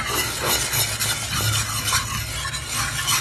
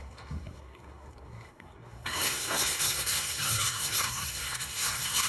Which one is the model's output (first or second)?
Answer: second